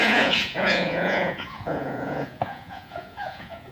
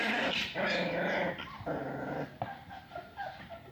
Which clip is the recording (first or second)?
second